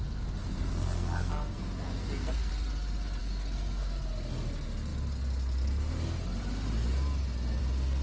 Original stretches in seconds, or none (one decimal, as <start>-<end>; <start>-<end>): 0.0-0.4; 2.5-3.2; 4.0-8.0

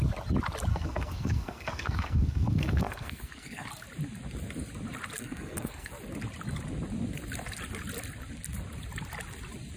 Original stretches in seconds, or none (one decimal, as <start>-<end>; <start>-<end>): 0.0-0.7; 3.7-5.2; 5.9-9.8

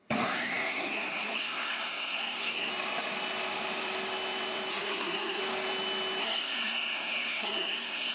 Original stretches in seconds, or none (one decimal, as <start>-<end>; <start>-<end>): 2.7-4.7; 5.4-6.2